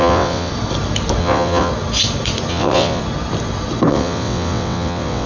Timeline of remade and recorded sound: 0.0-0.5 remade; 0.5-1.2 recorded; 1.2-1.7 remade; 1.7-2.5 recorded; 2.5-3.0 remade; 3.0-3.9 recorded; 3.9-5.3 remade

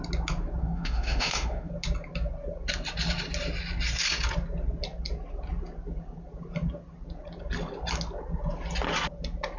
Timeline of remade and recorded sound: 0.0-0.6 recorded; 0.6-1.7 remade; 1.7-9.6 recorded

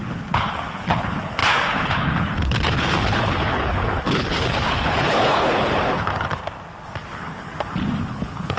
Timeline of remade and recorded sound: 0.0-6.4 remade; 6.4-7.1 recorded; 7.1-7.5 remade; 7.5-8.1 recorded; 8.1-8.6 remade

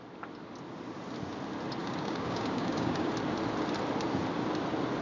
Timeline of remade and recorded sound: 0.0-1.8 recorded; 1.8-3.1 remade; 3.1-5.0 recorded

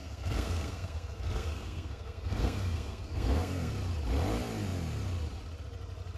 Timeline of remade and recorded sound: 0.0-3.7 remade; 3.7-6.2 recorded

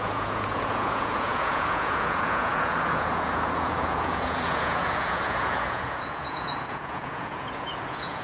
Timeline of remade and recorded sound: 0.0-8.2 remade

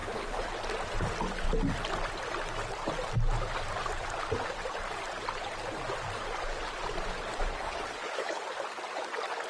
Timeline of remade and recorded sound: 0.0-0.5 remade; 0.5-7.4 recorded; 7.4-8.4 remade; 8.4-9.5 recorded